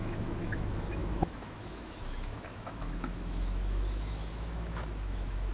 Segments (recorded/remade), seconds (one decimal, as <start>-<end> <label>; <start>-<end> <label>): 0.0-5.5 remade